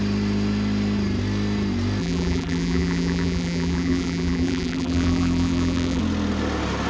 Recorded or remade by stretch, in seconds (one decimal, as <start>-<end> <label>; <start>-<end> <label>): 0.0-2.0 recorded; 2.0-6.0 remade; 6.0-6.9 recorded